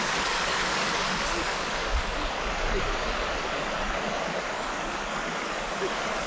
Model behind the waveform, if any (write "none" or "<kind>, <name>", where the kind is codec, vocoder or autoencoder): codec, DAC